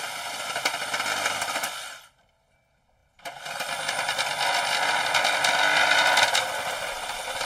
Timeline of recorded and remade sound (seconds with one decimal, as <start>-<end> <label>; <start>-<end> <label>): 0.0-7.5 recorded